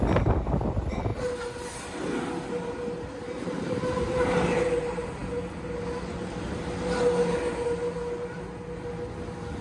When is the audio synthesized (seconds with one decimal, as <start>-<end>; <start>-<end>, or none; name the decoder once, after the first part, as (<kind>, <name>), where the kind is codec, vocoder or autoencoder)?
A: none